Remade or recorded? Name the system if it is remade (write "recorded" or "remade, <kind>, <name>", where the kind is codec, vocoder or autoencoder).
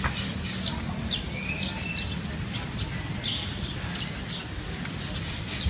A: recorded